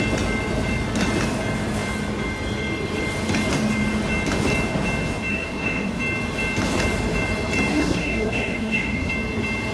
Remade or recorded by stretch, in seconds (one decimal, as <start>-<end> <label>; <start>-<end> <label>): 0.0-5.3 recorded; 5.3-6.0 remade; 6.0-7.7 recorded; 7.7-9.1 remade; 9.1-9.7 recorded